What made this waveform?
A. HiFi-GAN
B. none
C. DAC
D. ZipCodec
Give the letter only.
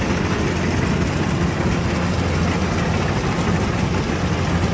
B